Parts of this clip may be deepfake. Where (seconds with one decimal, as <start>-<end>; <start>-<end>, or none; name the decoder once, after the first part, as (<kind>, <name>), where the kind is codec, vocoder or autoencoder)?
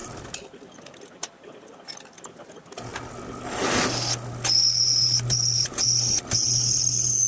none